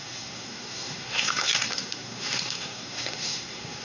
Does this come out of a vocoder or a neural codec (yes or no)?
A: yes